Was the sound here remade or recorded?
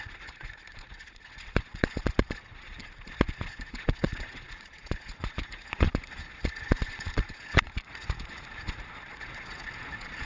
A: remade